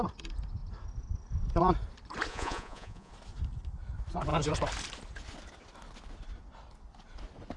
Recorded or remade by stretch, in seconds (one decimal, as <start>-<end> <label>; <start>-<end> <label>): 0.0-2.3 recorded; 2.3-3.1 remade; 3.1-7.6 recorded